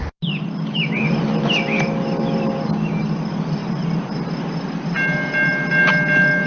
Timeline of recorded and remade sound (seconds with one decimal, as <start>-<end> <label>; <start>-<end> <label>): 0.0-6.5 recorded